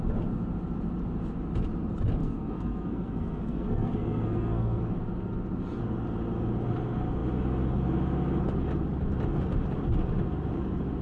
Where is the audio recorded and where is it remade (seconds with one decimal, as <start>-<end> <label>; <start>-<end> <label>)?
0.0-2.2 recorded; 2.2-4.8 remade; 4.8-11.0 recorded